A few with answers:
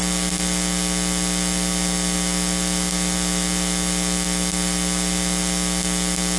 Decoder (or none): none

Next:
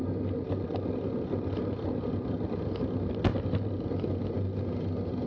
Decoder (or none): none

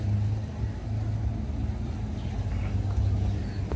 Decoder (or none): none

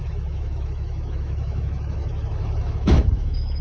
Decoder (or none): autoencoder, DAC-VAE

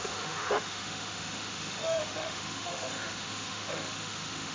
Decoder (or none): autoencoder, DAC-VAE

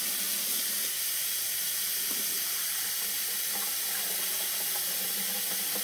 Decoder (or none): none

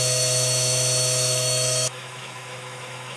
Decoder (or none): autoencoder, DAC-VAE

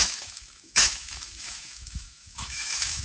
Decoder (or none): autoencoder, DAC-VAE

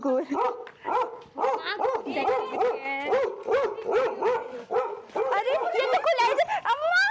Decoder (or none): none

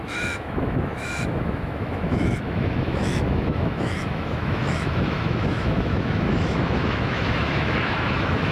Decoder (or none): autoencoder, DAC-VAE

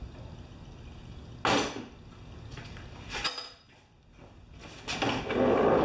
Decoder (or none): none